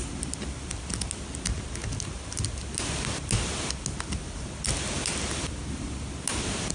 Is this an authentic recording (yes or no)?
yes